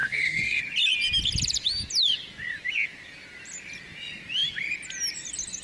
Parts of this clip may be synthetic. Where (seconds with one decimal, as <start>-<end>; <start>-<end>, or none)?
0.0-0.6